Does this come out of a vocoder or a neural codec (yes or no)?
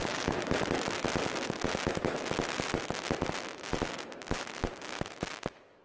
no